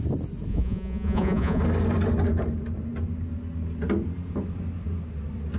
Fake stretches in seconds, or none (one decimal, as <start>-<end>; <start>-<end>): 0.5-1.6